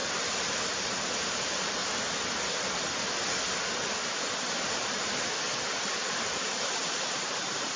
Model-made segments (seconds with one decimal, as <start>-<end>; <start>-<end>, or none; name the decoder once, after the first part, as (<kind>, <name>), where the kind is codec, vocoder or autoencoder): 0.0-1.8 (vocoder, BigVGAN v2); 4.5-7.8